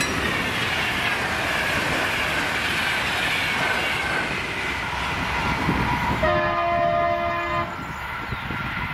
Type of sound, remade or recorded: recorded